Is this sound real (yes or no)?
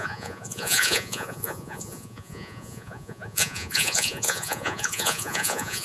no